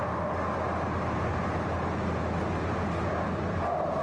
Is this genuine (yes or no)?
yes